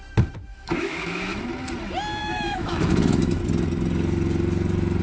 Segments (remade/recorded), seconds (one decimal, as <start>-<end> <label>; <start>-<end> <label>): 0.0-0.5 recorded; 0.5-1.4 remade; 1.4-2.2 recorded; 2.2-3.4 remade; 3.4-5.0 recorded